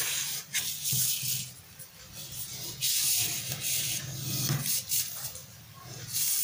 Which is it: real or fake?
real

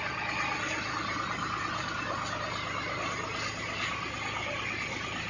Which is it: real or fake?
real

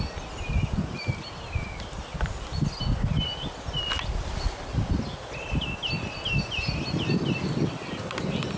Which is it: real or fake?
real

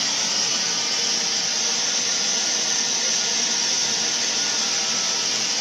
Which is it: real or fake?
real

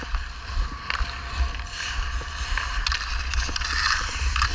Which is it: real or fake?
real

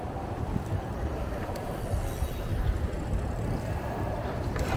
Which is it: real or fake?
fake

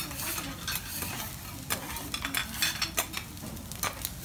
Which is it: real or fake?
real